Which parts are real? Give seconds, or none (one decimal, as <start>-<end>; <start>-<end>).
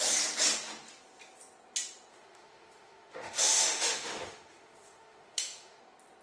0.0-2.1; 5.8-6.2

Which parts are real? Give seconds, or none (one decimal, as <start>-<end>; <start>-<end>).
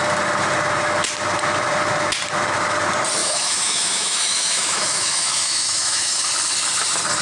0.0-3.2; 6.3-7.2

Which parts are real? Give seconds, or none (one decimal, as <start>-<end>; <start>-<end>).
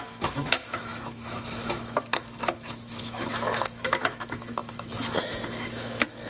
none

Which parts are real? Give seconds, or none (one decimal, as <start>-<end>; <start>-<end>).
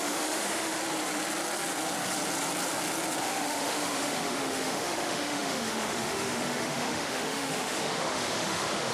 0.8-3.2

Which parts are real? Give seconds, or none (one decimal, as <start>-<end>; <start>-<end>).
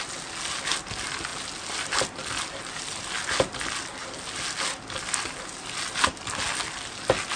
0.0-7.4